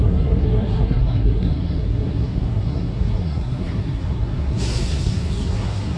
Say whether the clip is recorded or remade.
remade